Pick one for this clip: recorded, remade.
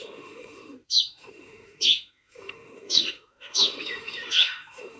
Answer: remade